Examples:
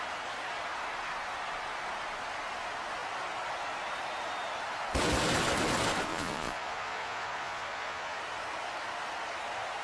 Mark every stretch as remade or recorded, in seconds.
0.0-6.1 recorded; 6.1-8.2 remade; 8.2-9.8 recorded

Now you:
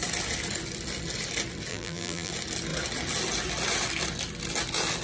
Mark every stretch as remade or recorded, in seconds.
0.0-1.7 recorded; 1.7-2.3 remade; 2.3-5.0 recorded

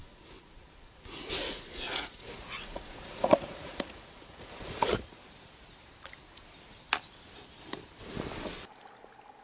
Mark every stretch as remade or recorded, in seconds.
0.0-5.2 remade; 5.2-9.4 recorded